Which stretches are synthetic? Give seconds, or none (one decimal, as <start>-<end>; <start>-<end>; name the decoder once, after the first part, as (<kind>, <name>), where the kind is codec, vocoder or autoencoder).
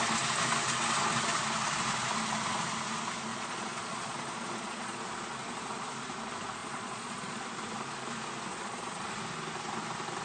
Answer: 3.3-5.0 (vocoder, Vocos); 6.6-7.4; 8.5-9.1